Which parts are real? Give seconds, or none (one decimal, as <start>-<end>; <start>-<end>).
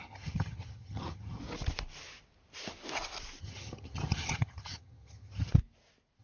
1.4-3.4; 5.5-6.2